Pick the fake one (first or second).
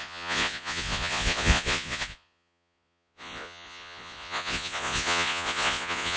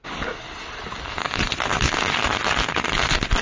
first